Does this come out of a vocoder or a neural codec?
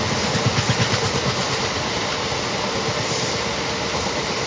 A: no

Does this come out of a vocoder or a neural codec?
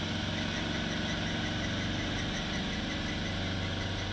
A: no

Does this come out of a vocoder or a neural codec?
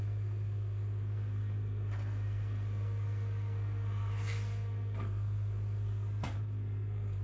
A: yes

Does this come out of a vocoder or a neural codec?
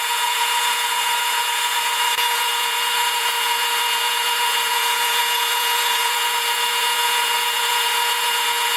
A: yes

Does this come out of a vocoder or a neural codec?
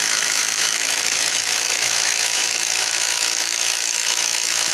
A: yes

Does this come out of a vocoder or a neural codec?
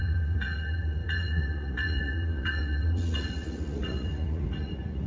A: yes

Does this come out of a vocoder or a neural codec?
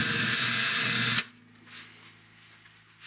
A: no